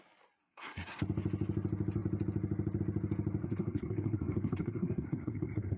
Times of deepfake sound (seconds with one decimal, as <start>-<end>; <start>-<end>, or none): 0.4-1.0; 3.4-5.8